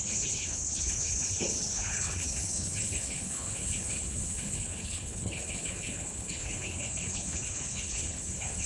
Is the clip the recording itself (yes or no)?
no